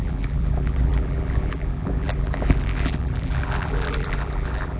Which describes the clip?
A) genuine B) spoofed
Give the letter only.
B